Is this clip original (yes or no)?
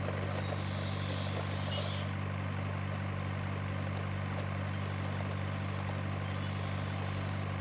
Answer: yes